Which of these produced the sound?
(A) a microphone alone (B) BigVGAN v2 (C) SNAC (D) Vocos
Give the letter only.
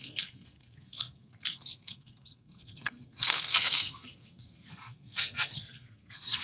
C